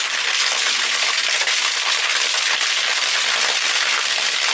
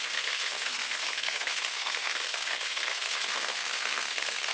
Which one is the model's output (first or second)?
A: second